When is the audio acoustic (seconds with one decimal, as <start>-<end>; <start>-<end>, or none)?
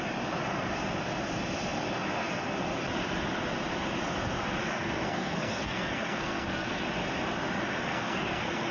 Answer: 0.0-4.6; 6.8-7.8